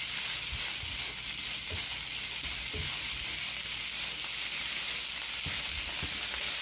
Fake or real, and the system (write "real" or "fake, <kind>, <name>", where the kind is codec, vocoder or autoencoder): real